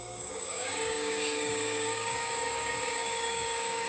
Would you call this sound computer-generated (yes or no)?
yes